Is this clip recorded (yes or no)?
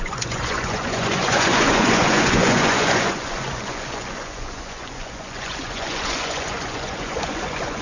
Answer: no